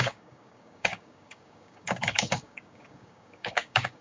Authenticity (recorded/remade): remade